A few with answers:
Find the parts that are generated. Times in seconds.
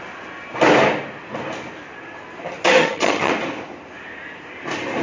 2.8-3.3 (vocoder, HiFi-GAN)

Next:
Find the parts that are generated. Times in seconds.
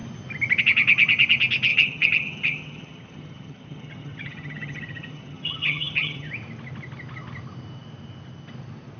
1.7-6.3 (vocoder, HiFi-GAN)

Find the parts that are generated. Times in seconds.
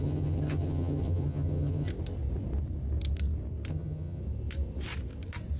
0.0-1.9 (vocoder, HiFi-GAN); 3.7-4.2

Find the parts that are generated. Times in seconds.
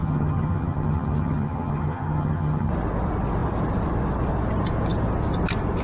0.0-2.7 (vocoder, HiFi-GAN)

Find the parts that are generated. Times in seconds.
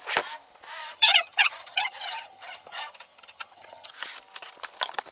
0.8-3.9 (vocoder, HiFi-GAN)